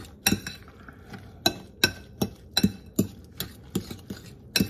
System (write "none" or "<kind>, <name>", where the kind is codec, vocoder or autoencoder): none